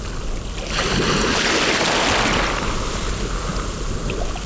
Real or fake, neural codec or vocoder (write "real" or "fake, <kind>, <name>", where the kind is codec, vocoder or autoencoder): real